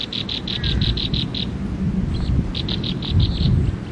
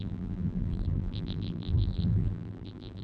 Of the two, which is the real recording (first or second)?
first